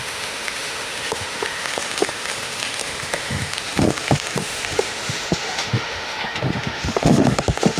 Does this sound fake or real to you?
fake